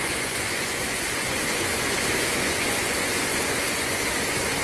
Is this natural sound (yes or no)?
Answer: no